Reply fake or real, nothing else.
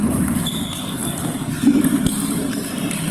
fake